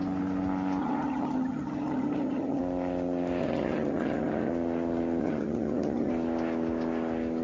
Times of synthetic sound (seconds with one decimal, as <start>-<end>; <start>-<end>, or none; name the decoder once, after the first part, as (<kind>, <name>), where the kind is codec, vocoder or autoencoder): 0.8-2.6 (vocoder, HiFi-GAN); 3.4-4.5; 5.2-6.1